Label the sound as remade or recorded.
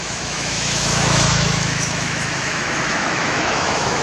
remade